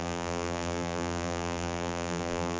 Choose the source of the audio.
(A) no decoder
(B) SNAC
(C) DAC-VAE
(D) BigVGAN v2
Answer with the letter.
D